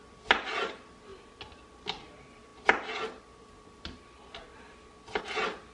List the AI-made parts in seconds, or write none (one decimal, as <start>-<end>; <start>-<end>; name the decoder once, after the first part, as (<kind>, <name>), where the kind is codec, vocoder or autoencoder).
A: none